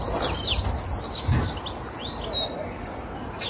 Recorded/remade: recorded